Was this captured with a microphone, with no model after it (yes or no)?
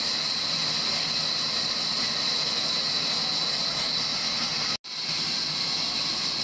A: yes